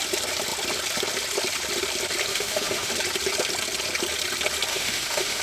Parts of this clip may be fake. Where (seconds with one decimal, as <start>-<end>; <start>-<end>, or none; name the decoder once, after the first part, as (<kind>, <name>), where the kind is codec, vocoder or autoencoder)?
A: 2.3-2.9 (autoencoder, DAC-VAE); 4.7-5.4